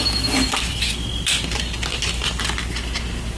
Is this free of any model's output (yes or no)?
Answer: yes